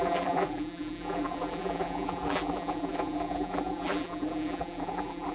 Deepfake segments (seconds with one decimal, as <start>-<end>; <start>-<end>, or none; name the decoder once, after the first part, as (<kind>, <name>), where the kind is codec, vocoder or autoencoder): 0.0-5.3 (vocoder, BigVGAN v2)